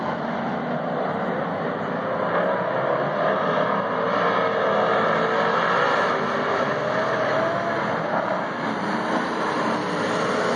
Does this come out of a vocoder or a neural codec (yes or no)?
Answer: no